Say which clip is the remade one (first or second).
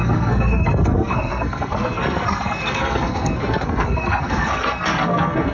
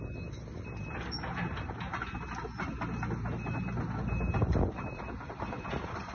first